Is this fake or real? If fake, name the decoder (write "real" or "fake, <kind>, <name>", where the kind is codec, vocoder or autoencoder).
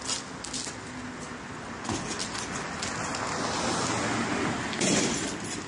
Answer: real